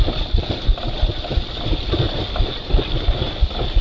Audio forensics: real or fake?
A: real